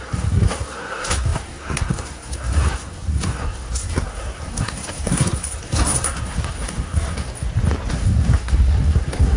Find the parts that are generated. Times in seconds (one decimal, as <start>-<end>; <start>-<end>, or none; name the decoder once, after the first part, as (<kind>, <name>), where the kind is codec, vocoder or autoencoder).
0.0-7.3 (codec, SNAC); 7.9-9.4